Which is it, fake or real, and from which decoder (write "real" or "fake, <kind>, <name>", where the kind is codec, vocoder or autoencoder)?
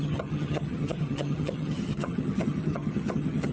fake, vocoder, HiFi-GAN